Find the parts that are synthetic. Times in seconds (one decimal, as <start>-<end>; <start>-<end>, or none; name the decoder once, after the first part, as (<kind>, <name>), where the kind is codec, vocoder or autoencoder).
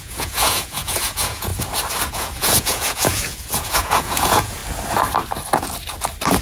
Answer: 0.0-1.5 (vocoder, Vocos); 2.1-4.6